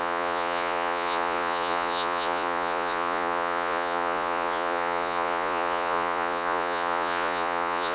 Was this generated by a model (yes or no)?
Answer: yes